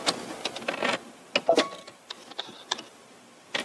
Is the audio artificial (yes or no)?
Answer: no